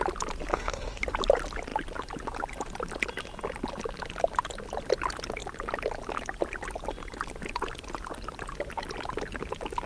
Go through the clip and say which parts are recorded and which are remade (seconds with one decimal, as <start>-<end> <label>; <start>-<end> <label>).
0.0-0.5 recorded; 0.5-1.0 remade; 1.0-9.9 recorded